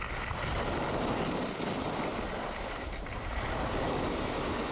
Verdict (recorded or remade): recorded